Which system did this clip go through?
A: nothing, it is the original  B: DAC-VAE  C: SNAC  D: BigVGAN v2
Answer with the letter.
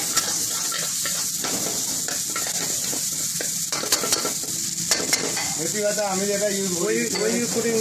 A